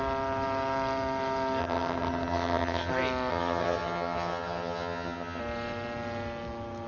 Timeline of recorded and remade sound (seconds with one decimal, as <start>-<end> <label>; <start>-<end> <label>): 0.0-1.6 recorded; 1.6-2.9 remade; 2.9-3.3 recorded; 3.3-5.4 remade; 5.4-6.9 recorded